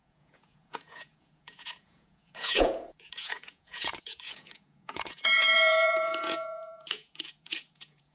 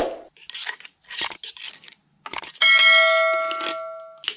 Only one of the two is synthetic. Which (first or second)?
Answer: first